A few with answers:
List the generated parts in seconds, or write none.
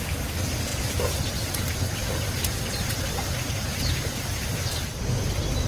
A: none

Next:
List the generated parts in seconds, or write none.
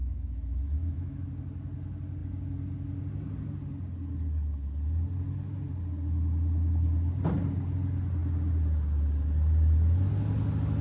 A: 0.0-1.3 (autoencoder, DAC-VAE)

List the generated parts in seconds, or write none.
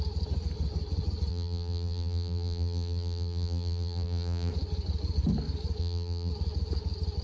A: 1.3-4.5 (vocoder, BigVGAN v2); 5.8-6.3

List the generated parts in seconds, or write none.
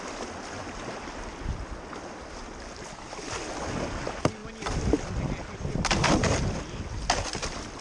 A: none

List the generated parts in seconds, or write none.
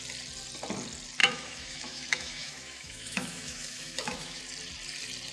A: 1.2-4.4 (autoencoder, DAC-VAE)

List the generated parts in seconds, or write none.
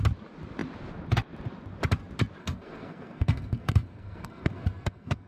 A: 2.4-5.3 (codec, SNAC)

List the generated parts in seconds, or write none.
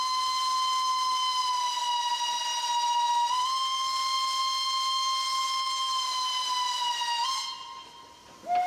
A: none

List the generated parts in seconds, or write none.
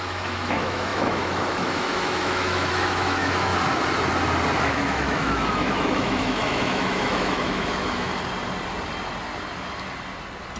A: 0.0-3.5 (autoencoder, DAC-VAE); 4.6-8.1